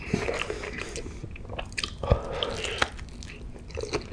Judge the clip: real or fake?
real